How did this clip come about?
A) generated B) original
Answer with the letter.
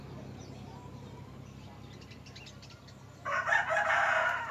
B